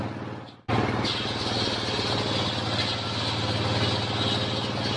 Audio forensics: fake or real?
real